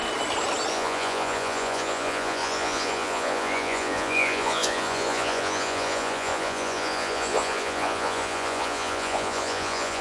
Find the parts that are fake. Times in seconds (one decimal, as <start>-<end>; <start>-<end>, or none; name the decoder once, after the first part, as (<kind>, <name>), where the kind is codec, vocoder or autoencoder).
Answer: 0.7-10.0 (vocoder, Vocos)

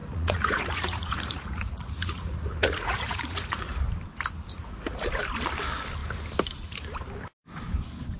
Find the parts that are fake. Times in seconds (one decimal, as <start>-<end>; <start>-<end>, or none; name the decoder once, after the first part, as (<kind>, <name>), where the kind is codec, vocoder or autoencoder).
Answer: 0.0-3.9 (vocoder, Vocos); 4.5-5.2

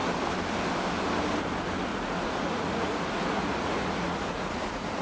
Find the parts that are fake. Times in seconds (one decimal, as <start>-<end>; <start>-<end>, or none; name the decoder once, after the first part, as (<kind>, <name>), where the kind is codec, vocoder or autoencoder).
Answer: 1.9-5.0 (vocoder, Vocos)

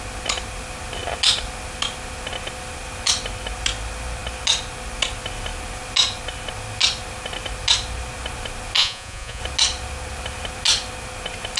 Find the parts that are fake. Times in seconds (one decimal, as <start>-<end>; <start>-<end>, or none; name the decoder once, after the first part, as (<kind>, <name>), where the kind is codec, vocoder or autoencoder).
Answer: 8.8-9.4 (vocoder, Vocos)

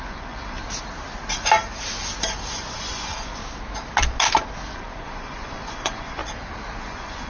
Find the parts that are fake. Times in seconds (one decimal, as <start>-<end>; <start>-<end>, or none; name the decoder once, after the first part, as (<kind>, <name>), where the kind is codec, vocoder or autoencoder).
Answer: 0.0-0.6 (vocoder, Vocos); 2.5-3.4; 4.7-6.2; 6.8-7.3

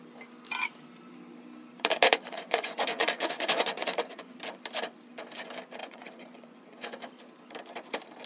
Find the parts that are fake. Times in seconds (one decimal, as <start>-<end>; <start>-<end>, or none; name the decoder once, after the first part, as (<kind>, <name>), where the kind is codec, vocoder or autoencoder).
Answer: 1.7-4.4 (vocoder, Vocos); 5.8-7.1